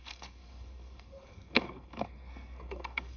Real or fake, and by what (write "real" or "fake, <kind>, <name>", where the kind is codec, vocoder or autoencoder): fake, codec, SNAC